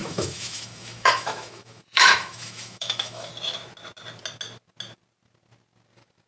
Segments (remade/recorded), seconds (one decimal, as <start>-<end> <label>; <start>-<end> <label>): 0.0-3.3 remade; 3.3-6.3 recorded